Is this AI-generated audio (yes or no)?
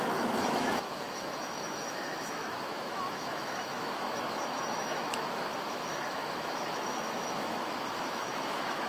yes